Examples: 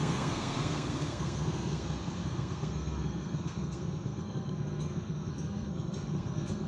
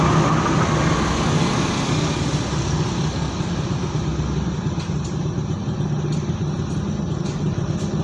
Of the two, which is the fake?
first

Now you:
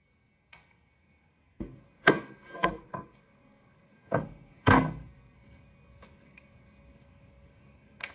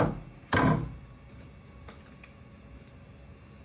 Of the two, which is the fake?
first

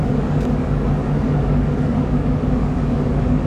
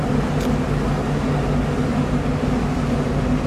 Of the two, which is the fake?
first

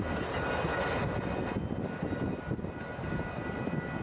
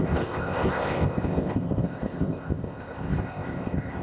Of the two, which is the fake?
second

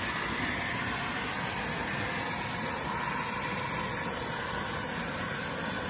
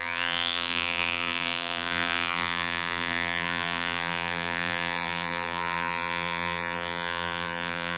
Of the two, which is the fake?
second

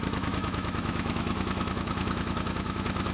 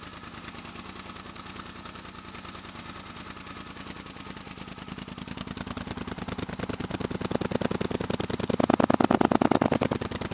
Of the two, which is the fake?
first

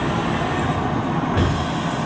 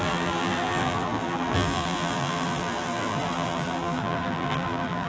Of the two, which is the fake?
second